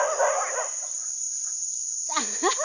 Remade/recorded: recorded